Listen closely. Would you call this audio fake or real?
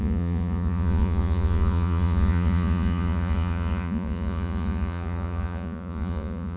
fake